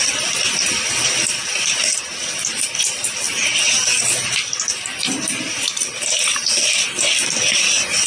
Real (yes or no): yes